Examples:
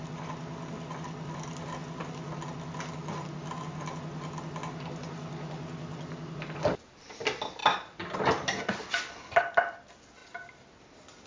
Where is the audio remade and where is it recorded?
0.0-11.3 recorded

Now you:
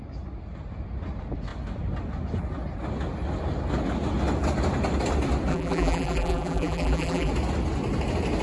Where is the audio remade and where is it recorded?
0.0-5.5 recorded; 5.5-7.3 remade; 7.3-8.4 recorded